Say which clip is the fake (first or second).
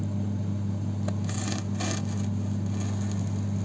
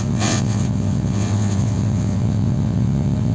second